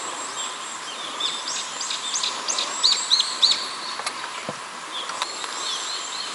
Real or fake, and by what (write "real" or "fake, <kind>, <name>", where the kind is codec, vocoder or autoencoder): real